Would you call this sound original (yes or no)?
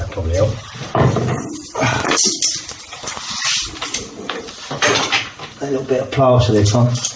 yes